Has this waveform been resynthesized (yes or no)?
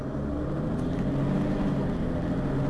no